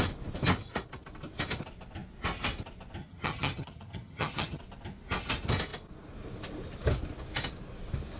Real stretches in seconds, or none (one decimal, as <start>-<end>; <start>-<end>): 0.0-3.0; 4.6-8.2